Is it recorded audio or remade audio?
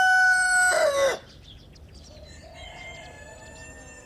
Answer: recorded